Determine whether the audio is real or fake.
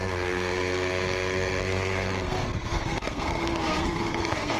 fake